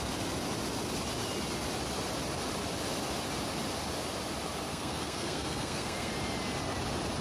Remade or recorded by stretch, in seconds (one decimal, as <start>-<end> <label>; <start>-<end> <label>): 0.0-4.7 recorded; 4.7-6.1 remade; 6.1-7.2 recorded